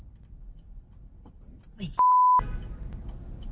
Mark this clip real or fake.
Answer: real